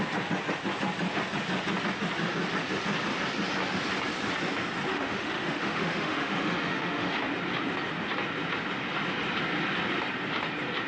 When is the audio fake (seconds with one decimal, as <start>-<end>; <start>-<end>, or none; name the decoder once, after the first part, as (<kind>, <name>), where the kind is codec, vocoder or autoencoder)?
4.9-7.2 (autoencoder, DAC-VAE)